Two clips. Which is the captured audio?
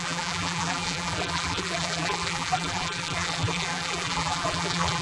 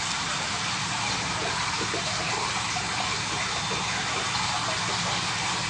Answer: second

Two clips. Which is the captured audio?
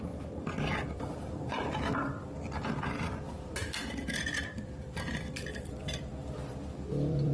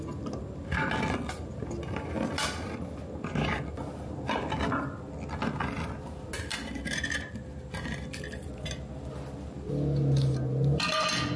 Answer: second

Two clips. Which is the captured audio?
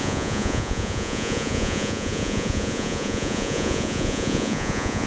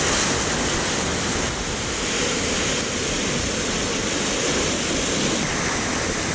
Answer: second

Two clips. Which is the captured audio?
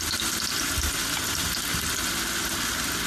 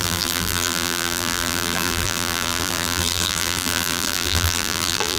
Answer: first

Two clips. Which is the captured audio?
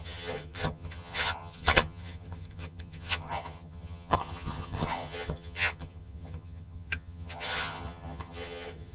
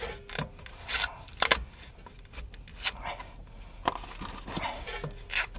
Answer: second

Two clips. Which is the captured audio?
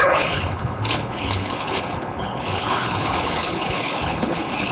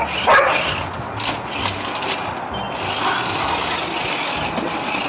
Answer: second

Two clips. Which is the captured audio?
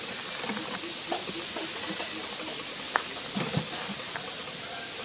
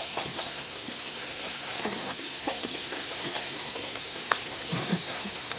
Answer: first